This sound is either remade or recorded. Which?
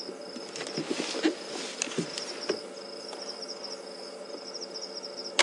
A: recorded